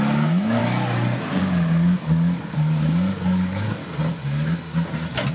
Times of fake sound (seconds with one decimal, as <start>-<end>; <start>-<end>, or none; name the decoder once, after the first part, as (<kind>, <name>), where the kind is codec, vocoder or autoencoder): 0.0-0.6 (codec, DAC); 1.4-3.8